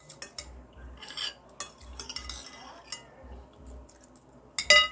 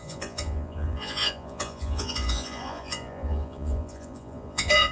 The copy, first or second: second